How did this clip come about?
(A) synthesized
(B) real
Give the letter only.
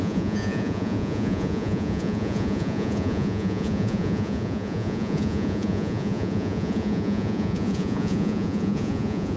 A